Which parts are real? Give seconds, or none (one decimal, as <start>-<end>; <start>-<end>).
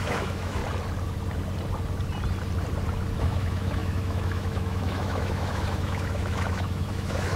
0.6-3.2